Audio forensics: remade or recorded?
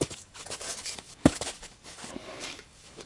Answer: remade